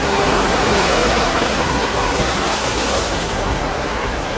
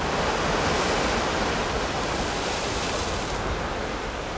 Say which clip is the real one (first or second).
second